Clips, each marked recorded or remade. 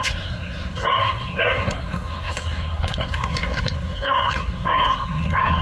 remade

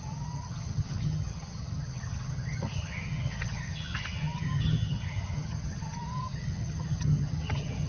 remade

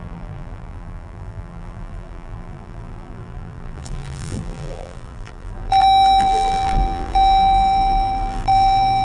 remade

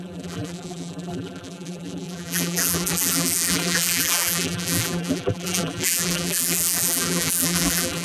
remade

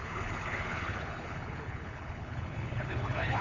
remade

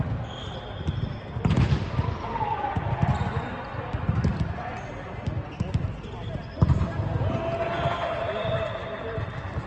recorded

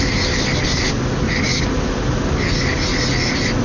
recorded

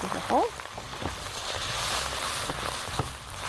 recorded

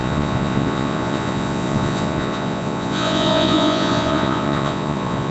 remade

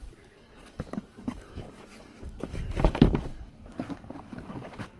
remade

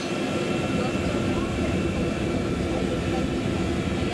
recorded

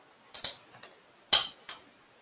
recorded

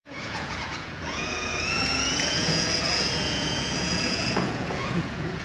remade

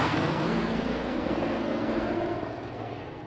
remade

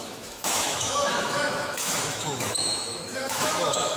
remade